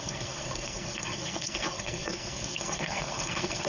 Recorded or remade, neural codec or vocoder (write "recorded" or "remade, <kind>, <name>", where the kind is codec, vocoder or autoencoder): remade, codec, SNAC